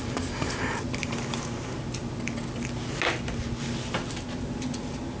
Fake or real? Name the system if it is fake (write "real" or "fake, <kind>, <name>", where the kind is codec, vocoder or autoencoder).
real